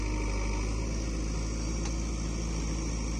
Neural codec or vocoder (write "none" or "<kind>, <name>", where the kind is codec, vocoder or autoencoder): none